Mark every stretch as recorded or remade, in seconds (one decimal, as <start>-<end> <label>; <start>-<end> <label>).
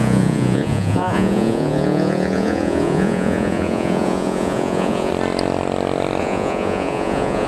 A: 0.0-5.1 remade; 5.1-6.2 recorded; 6.2-7.5 remade